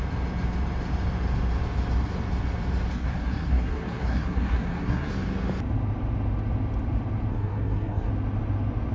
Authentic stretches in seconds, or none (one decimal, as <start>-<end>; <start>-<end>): 0.0-2.9; 5.1-7.3; 8.1-8.9